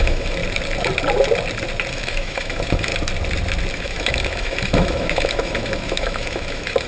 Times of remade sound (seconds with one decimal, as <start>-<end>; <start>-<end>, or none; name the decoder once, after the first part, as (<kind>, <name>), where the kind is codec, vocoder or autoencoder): 0.0-0.4 (autoencoder, DAC-VAE); 1.9-2.9; 3.7-6.9

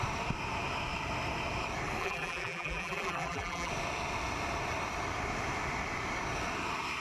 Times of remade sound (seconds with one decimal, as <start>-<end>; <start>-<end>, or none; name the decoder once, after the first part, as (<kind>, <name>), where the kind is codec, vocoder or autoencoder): 2.0-3.7 (vocoder, BigVGAN v2)

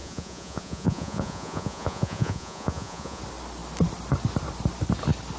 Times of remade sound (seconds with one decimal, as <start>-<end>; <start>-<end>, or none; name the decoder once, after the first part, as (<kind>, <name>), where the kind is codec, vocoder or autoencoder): 0.0-3.2 (vocoder, Vocos)

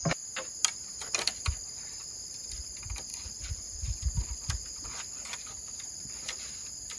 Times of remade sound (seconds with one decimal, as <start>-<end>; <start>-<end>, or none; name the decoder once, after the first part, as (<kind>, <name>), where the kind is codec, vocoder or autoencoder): 3.1-4.5 (vocoder, BigVGAN v2)

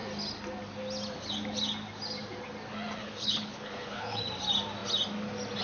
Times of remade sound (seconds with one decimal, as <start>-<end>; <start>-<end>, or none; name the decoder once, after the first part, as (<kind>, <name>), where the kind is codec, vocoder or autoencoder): 3.0-4.2 (codec, HILCodec)